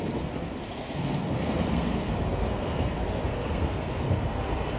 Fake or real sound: fake